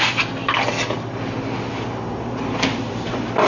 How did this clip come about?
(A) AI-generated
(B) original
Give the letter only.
B